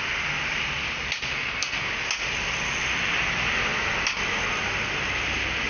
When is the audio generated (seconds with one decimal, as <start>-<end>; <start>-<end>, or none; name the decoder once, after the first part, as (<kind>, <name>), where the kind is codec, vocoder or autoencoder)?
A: 1.3-1.9 (codec, SNAC)

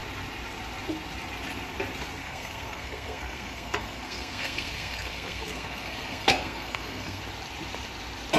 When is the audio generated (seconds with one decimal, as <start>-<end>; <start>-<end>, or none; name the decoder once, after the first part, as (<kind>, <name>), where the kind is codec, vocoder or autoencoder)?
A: 2.2-7.2 (codec, SNAC)

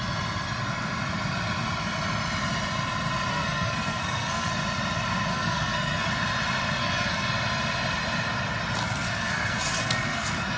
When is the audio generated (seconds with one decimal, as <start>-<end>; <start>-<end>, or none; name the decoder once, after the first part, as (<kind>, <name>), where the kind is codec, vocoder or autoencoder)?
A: 3.3-4.5 (codec, SNAC); 5.3-6.1; 6.8-7.3; 8.8-10.6

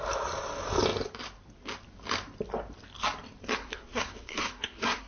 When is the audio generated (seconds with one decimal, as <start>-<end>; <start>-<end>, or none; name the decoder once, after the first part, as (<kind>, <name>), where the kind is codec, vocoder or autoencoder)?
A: 3.6-5.1 (codec, SNAC)

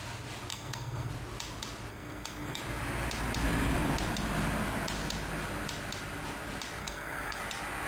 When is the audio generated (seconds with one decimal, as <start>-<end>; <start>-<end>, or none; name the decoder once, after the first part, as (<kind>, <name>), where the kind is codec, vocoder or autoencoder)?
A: 0.5-1.1 (codec, SNAC); 1.9-2.6; 6.8-7.4

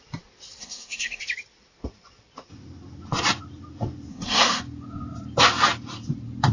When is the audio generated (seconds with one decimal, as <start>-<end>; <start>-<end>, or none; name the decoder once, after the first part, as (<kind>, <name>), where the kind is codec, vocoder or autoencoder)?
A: 0.6-1.2 (codec, SNAC); 4.1-4.6